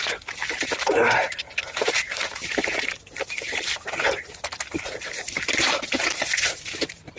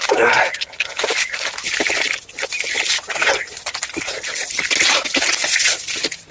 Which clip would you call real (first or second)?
second